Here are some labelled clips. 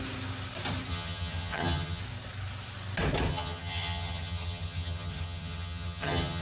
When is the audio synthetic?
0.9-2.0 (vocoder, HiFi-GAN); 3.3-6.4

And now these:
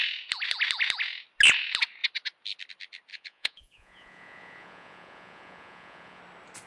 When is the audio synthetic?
3.1-6.2 (vocoder, Vocos)

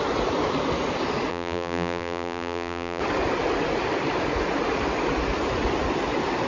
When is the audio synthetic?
1.3-3.0 (vocoder, BigVGAN v2)

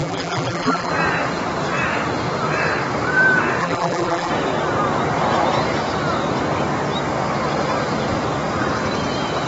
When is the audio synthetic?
0.0-0.9 (vocoder, BigVGAN v2); 3.6-4.3

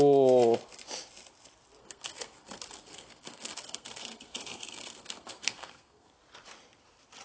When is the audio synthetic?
1.8-6.1 (codec, SNAC)